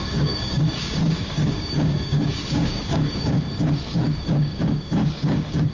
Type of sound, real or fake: fake